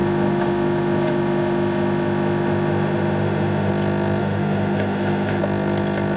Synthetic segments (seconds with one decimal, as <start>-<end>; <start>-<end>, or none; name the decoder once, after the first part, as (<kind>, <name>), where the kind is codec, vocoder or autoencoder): 0.0-3.7 (autoencoder, DAC-VAE); 4.2-5.4